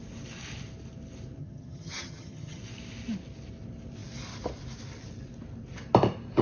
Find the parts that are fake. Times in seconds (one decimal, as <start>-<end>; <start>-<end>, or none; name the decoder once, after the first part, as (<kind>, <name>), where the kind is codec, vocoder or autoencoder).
1.4-2.6 (vocoder, HiFi-GAN)